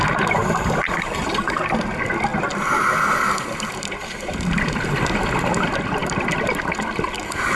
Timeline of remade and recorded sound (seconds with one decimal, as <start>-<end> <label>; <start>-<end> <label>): 0.0-0.4 recorded; 0.4-1.3 remade; 1.3-2.3 recorded; 2.3-2.9 remade; 2.9-6.0 recorded; 6.0-7.6 remade